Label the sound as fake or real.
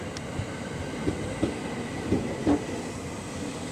real